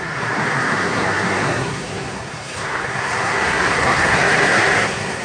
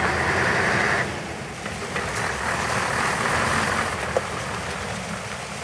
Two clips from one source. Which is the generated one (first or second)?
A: first